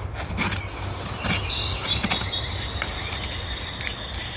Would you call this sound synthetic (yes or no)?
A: no